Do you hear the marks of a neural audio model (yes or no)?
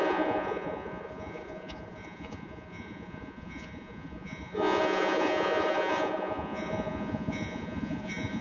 yes